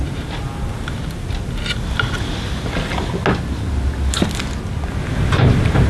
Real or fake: real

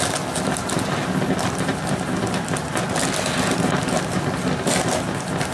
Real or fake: real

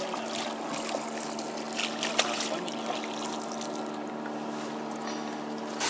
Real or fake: real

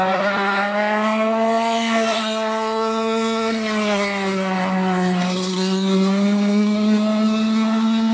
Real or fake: fake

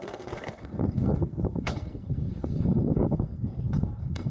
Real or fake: fake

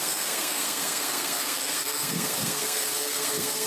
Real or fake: fake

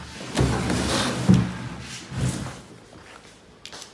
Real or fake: real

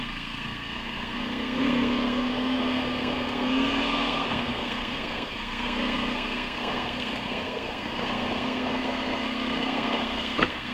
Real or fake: fake